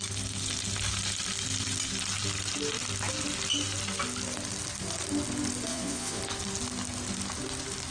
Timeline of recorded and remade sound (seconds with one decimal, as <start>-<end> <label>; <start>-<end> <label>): 0.0-5.7 recorded; 5.7-6.2 remade; 6.2-7.9 recorded